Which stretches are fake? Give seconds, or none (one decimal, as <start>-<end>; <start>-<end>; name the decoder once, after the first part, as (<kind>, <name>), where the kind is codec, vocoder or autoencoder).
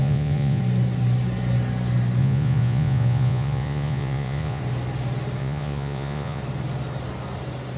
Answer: 0.0-0.6 (vocoder, Vocos); 2.2-4.6; 5.4-6.4